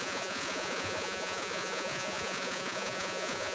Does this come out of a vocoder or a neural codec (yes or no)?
yes